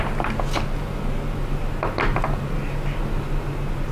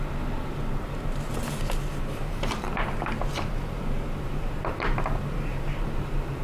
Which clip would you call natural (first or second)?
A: first